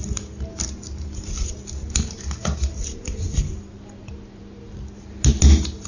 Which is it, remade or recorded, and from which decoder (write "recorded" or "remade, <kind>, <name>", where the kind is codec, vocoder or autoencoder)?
recorded